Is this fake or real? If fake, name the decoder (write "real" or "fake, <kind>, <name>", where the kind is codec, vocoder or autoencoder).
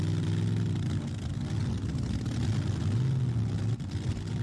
real